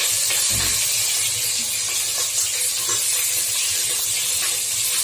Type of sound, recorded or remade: recorded